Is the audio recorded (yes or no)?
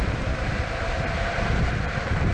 no